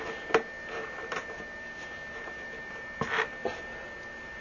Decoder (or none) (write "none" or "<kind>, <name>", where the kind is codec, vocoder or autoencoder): none